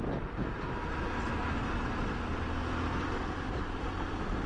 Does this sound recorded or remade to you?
recorded